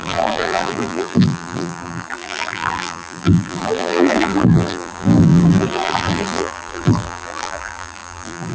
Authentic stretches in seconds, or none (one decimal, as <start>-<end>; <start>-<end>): none